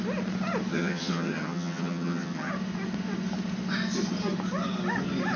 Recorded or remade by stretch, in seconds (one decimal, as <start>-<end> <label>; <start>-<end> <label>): 0.0-0.7 recorded; 0.7-2.5 remade; 2.5-5.4 recorded